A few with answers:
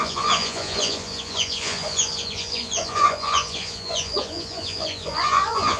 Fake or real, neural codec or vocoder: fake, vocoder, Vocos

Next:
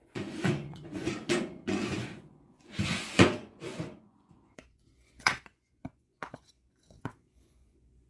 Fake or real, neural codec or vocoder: fake, vocoder, Vocos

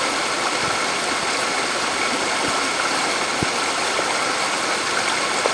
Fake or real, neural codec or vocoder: real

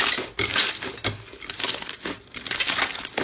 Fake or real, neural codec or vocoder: real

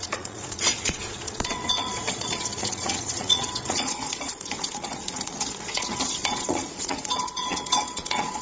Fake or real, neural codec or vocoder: fake, vocoder, Vocos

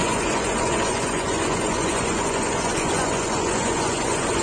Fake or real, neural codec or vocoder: fake, vocoder, Vocos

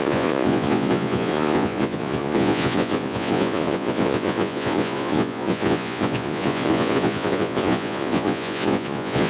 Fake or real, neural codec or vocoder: fake, vocoder, Vocos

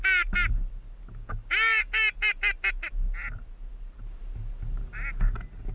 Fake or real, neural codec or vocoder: real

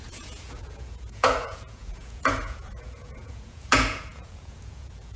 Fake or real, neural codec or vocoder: fake, vocoder, Vocos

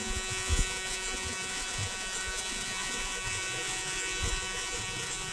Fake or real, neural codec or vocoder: fake, vocoder, Vocos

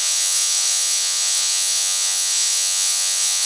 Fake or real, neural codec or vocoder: fake, vocoder, Vocos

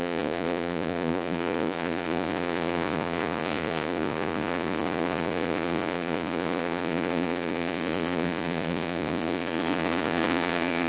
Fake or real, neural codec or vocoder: fake, vocoder, Vocos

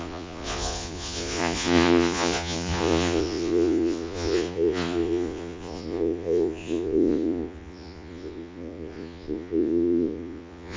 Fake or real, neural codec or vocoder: fake, vocoder, Vocos